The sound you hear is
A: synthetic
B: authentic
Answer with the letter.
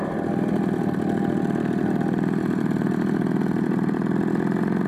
A